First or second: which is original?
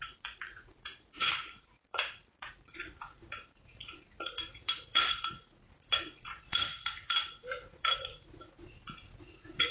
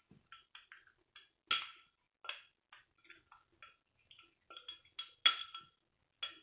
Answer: second